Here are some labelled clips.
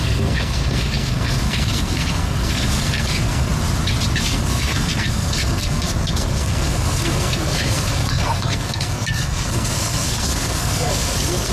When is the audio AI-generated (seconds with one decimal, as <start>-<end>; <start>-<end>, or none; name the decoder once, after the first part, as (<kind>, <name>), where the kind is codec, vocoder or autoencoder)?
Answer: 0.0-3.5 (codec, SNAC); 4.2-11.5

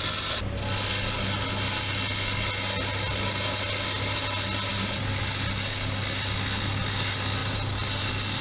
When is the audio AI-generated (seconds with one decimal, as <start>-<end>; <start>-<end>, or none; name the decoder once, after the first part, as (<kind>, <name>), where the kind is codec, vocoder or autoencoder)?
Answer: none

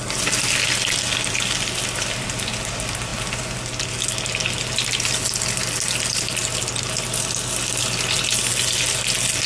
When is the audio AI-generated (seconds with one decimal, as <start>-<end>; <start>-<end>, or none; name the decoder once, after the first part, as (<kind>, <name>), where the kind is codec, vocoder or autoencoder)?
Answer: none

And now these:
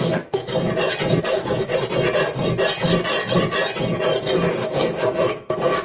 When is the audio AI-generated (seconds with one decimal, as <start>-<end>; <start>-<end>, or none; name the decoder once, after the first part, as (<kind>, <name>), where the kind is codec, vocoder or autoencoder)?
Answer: 0.0-0.4 (codec, SNAC); 1.2-1.7; 4.5-5.8

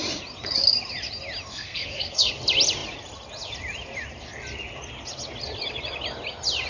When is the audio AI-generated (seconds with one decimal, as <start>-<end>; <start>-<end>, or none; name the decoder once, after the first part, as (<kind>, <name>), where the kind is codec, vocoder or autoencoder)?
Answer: 1.5-2.3 (codec, SNAC)